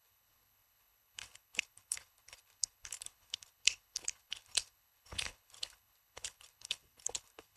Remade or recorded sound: remade